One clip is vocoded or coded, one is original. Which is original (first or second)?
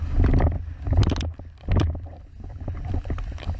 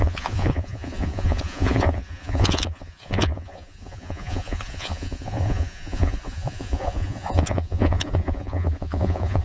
first